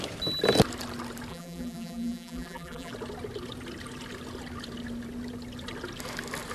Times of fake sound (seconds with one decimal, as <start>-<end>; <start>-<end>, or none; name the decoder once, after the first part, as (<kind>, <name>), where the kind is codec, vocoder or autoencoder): 1.3-2.9 (vocoder, BigVGAN v2)